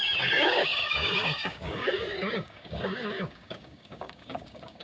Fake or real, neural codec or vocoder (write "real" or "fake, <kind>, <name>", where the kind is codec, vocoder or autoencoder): fake, codec, DAC